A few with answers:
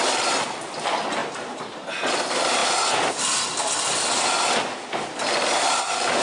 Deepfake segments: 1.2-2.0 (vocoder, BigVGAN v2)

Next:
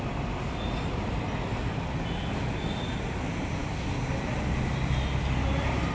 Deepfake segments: none

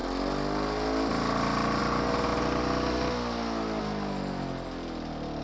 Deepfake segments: none